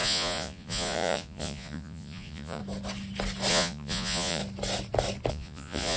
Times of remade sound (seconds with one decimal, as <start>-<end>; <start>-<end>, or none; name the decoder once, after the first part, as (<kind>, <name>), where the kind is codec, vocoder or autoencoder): 0.0-2.6 (vocoder, Vocos); 3.5-4.4; 5.3-6.0